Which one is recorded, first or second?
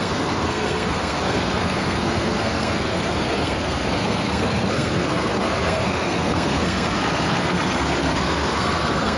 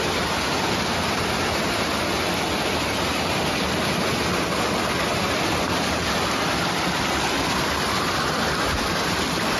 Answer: second